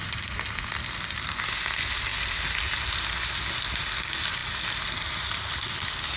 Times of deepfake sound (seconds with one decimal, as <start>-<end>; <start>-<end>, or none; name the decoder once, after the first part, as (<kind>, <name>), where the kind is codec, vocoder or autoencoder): none